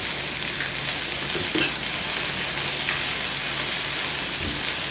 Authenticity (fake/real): real